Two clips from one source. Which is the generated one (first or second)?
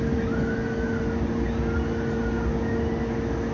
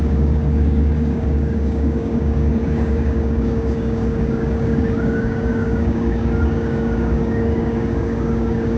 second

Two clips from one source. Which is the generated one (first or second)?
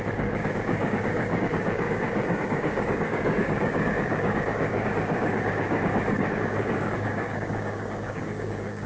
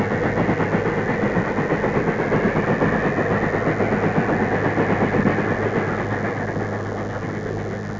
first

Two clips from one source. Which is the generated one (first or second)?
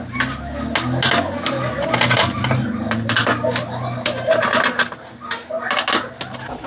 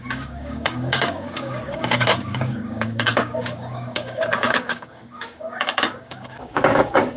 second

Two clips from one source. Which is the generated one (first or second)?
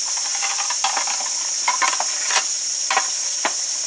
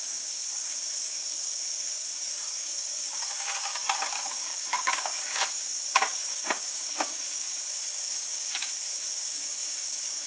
second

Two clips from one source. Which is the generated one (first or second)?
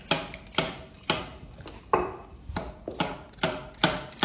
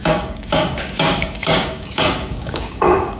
second